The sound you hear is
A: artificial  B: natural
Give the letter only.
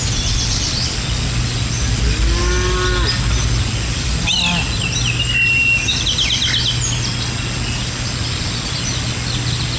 B